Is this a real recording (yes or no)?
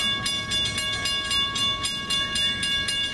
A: yes